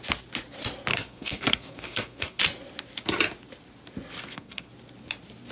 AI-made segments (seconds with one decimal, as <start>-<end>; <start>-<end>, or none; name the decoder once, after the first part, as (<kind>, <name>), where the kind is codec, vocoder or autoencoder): 0.9-2.4 (codec, SNAC); 4.2-4.7